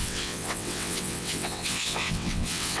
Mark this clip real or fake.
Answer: fake